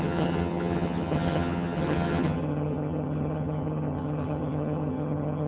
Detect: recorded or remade remade